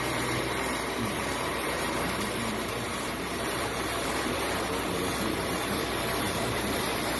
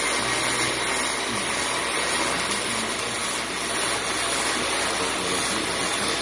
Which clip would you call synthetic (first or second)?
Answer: first